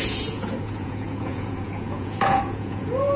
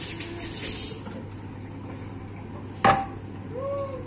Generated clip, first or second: first